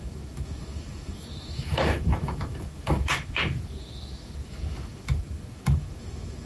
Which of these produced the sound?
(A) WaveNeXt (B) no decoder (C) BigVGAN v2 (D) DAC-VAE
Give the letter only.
D